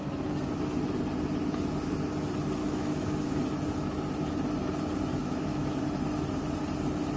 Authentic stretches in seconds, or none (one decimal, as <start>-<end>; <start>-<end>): 0.0-2.6; 3.4-5.2; 5.8-7.2